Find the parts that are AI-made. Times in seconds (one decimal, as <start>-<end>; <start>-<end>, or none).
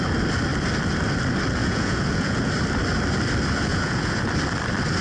1.6-2.5; 3.7-4.2